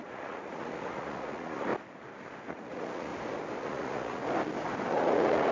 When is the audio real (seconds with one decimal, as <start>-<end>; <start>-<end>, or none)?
1.7-2.5; 3.1-3.6; 4.2-4.9